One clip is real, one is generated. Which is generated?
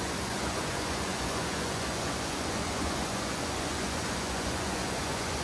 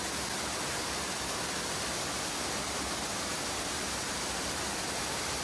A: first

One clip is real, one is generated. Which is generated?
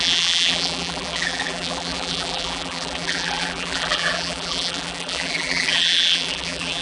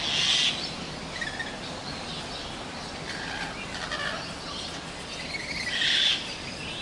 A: first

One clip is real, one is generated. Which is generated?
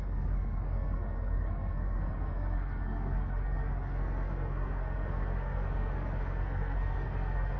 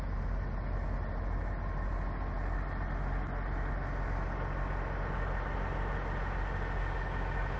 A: first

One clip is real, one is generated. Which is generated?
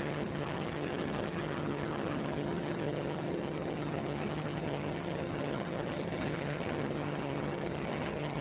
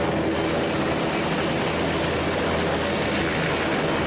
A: first